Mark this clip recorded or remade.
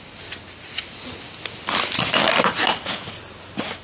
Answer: recorded